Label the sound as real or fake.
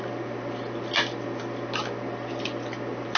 real